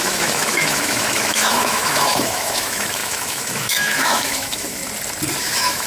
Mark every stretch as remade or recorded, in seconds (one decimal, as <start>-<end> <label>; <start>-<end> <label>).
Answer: 0.0-4.8 remade; 4.8-5.4 recorded; 5.4-5.9 remade